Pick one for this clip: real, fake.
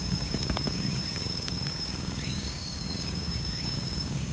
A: fake